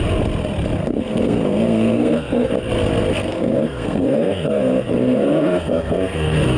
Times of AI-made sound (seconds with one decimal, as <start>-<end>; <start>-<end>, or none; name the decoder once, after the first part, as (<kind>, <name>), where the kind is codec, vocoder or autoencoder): 0.8-2.5 (codec, SNAC); 3.1-6.6